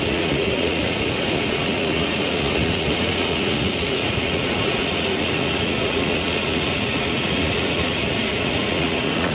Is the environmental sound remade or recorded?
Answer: remade